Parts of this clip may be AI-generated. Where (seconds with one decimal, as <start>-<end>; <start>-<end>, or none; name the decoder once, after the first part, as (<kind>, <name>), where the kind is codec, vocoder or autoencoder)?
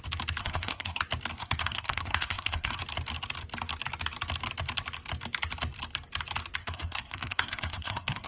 0.4-1.0 (codec, SNAC); 1.4-2.8; 6.6-8.3